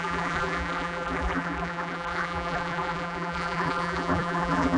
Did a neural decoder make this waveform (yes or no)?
yes